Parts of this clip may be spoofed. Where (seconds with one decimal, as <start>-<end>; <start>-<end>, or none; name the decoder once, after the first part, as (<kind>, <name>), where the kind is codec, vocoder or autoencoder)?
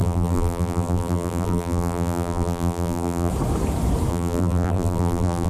0.0-3.3 (vocoder, BigVGAN v2); 4.1-5.5